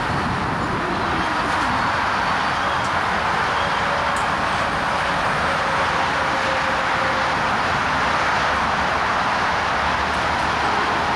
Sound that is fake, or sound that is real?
real